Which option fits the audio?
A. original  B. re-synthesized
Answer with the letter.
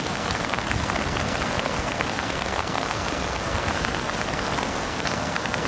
B